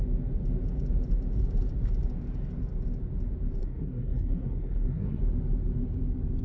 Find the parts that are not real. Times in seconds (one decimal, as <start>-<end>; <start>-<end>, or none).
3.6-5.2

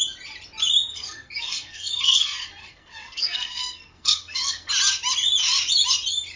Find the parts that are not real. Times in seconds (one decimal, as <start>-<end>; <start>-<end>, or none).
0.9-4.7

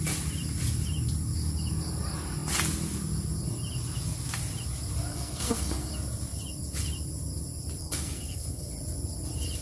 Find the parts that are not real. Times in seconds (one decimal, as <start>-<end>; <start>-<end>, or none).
5.1-5.9; 7.8-8.7